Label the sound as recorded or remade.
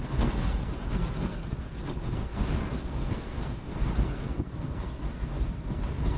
remade